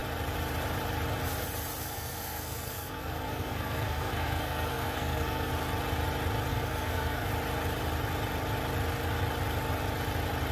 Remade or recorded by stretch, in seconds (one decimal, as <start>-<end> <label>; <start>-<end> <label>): 0.0-1.8 recorded; 1.8-5.5 remade; 5.5-6.5 recorded; 6.5-7.3 remade; 7.3-10.5 recorded